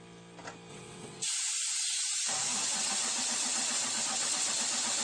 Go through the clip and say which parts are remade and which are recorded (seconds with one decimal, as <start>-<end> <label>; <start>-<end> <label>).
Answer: 0.0-0.7 recorded; 0.7-1.3 remade; 1.3-2.6 recorded; 2.6-4.5 remade; 4.5-5.0 recorded